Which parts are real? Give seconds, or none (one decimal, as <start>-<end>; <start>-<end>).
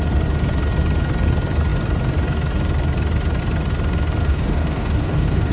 0.0-4.2